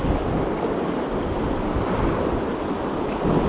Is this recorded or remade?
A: recorded